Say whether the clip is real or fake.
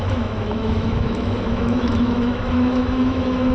fake